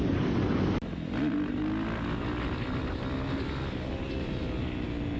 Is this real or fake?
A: real